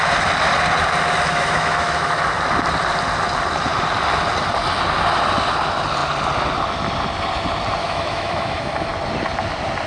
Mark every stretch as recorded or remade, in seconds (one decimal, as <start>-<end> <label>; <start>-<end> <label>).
0.0-1.3 recorded; 1.3-2.2 remade; 2.2-7.8 recorded; 7.8-8.9 remade; 8.9-9.9 recorded